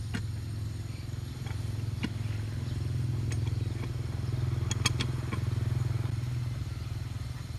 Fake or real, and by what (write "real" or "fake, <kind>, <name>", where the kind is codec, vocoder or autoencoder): real